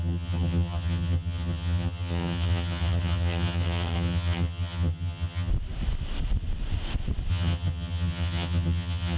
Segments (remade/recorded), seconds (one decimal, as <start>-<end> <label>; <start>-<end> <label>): 0.0-5.5 remade; 5.5-7.3 recorded; 7.3-9.2 remade